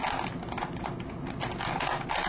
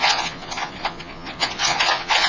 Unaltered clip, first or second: first